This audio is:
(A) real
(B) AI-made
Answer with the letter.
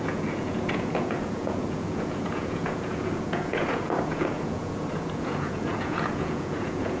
B